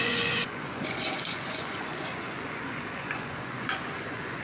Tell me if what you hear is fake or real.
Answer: fake